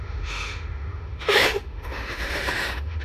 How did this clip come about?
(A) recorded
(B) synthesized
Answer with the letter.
B